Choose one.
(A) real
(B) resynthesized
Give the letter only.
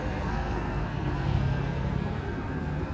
B